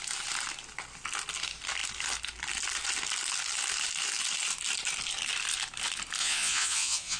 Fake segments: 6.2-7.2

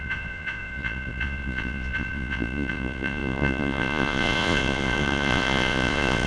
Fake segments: 0.0-6.3

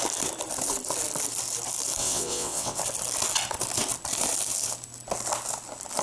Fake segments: 2.0-2.8

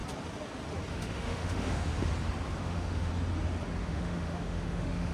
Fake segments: 0.9-1.9; 2.6-3.1; 3.8-5.1

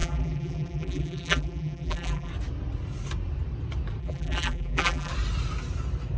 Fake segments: 0.0-2.3; 4.0-5.1